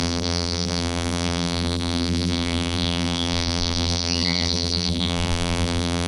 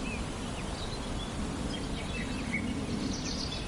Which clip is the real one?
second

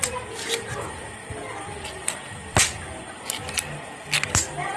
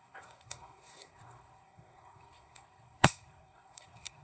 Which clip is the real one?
first